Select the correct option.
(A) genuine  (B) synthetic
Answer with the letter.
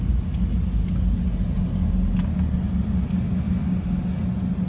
A